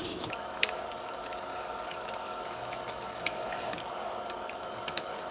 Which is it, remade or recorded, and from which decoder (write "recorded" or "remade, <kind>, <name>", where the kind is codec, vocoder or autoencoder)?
remade, codec, DAC